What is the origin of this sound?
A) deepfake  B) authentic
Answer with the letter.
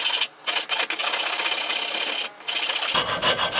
B